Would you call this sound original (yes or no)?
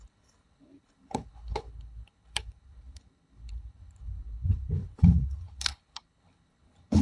no